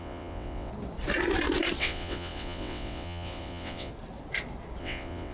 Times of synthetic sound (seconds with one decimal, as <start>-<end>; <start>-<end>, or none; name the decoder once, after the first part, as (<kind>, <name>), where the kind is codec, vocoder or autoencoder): 0.0-0.7 (vocoder, WaveNeXt); 1.8-3.9; 4.8-5.3